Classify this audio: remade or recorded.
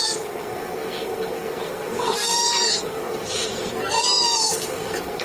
remade